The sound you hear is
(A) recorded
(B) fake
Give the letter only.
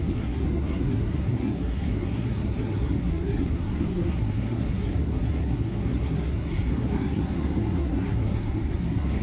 B